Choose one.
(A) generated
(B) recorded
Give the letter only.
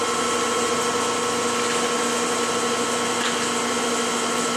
B